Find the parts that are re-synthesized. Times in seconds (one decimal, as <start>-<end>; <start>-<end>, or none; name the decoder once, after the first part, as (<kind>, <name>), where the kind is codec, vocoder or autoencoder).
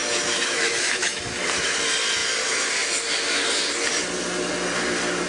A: 0.0-1.2 (autoencoder, DAC-VAE)